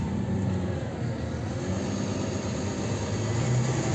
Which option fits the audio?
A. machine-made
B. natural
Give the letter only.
B